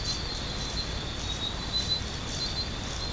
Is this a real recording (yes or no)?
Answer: yes